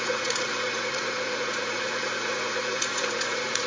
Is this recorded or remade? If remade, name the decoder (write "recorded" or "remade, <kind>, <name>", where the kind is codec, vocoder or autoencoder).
remade, vocoder, Vocos